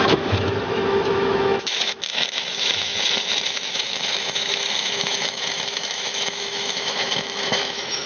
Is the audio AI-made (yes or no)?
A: yes